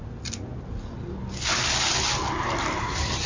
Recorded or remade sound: recorded